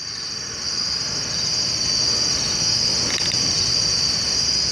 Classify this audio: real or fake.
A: real